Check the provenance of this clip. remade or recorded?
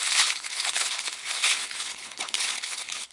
remade